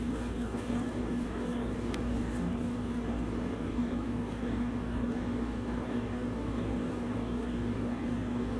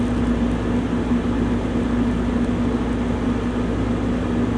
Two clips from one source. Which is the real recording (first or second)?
second